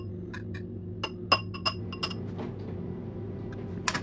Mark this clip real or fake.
real